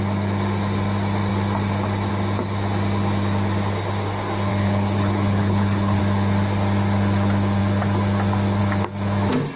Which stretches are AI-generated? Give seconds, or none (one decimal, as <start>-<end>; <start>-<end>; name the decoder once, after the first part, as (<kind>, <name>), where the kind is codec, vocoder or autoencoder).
4.5-6.0 (codec, HILCodec)